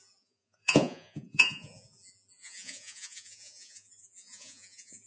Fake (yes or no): yes